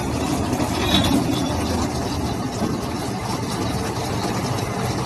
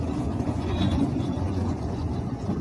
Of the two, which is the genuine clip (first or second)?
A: first